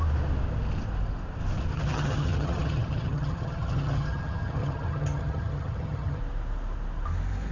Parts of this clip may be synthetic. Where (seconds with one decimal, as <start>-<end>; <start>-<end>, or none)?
1.7-6.2